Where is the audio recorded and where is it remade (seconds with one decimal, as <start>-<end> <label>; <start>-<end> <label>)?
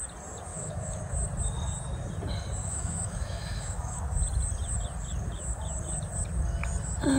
0.0-0.5 recorded; 0.5-1.0 remade; 1.0-2.6 recorded; 2.6-4.0 remade; 4.0-7.2 recorded